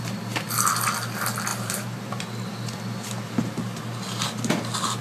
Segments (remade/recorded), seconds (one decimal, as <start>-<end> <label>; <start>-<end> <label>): 0.0-1.5 recorded; 1.5-2.2 remade; 2.2-5.0 recorded